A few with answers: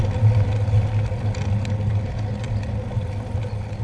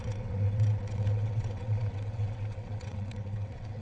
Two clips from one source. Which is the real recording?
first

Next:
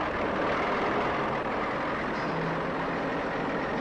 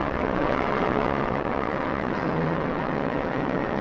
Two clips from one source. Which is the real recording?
first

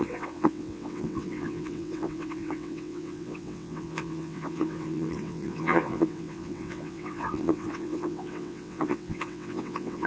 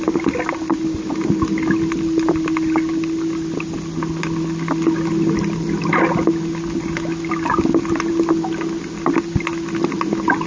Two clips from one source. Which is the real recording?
second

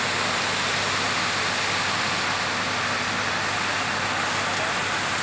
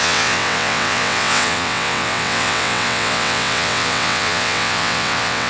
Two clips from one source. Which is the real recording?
first